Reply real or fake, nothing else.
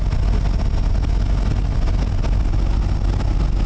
real